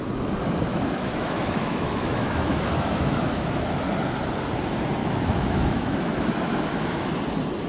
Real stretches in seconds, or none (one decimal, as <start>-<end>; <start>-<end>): 0.0-0.7; 3.8-5.0; 7.1-7.7